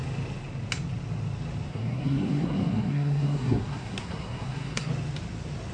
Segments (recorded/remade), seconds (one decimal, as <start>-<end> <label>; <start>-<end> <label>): 0.0-1.7 recorded; 1.7-4.9 remade; 4.9-5.7 recorded